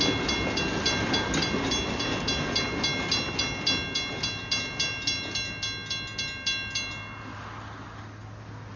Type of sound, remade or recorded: recorded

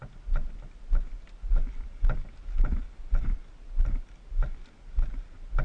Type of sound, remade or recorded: recorded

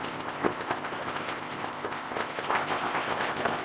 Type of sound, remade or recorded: remade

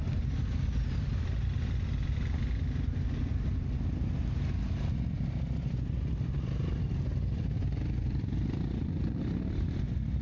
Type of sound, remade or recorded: recorded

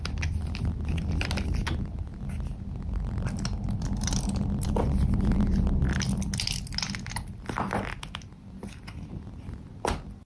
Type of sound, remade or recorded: recorded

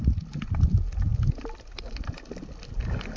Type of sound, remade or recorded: recorded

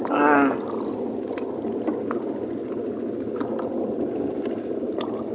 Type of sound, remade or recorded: recorded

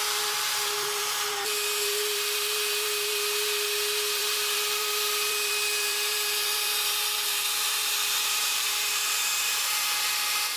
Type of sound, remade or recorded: remade